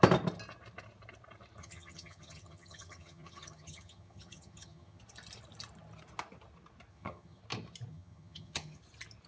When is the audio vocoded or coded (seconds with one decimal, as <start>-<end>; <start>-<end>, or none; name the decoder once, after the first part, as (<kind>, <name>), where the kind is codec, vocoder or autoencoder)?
1.6-5.0 (vocoder, HiFi-GAN); 6.9-7.4; 7.9-8.8